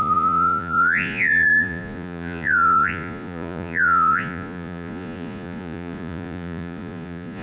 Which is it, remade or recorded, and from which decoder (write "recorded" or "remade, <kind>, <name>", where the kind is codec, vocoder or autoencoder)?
remade, vocoder, Vocos